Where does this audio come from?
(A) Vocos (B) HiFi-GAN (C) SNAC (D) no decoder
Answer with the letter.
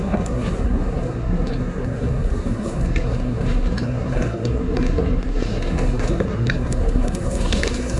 C